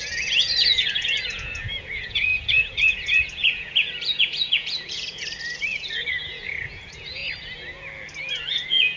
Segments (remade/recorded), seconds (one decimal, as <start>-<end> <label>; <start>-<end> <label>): 0.0-7.2 remade; 7.2-8.2 recorded; 8.2-9.0 remade